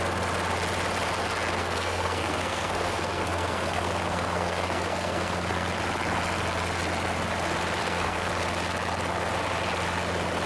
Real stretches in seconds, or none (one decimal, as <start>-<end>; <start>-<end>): 0.0-1.6; 5.7-7.8; 8.3-10.5